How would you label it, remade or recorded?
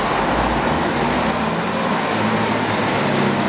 recorded